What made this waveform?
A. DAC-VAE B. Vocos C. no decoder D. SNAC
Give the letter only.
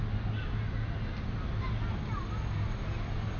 C